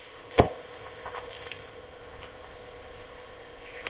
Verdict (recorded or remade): remade